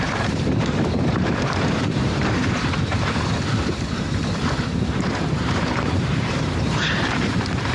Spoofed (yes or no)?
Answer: yes